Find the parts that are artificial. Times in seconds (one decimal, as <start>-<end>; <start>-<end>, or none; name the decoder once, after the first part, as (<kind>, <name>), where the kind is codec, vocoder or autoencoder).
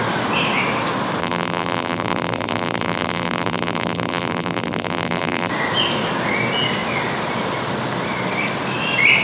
1.2-5.5 (vocoder, BigVGAN v2)